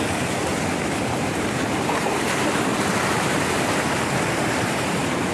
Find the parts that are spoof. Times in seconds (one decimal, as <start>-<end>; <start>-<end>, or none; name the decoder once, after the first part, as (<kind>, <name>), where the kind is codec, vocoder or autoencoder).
0.0-0.5 (vocoder, BigVGAN v2); 1.1-2.7; 4.3-5.3